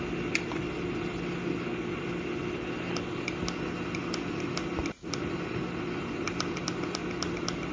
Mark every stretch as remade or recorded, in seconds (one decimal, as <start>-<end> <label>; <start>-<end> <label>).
0.0-7.7 recorded